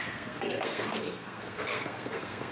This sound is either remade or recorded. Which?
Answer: remade